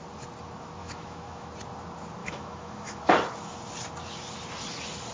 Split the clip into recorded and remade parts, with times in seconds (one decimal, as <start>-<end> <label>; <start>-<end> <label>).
0.0-0.8 recorded; 0.8-1.5 remade; 1.5-2.2 recorded; 2.2-3.0 remade; 3.0-5.1 recorded